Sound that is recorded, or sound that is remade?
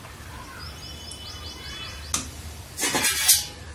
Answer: recorded